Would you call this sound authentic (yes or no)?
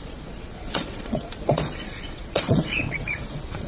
no